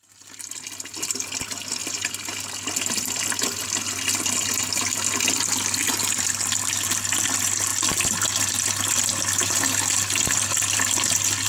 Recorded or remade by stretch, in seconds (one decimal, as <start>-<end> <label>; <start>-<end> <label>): 0.0-11.5 recorded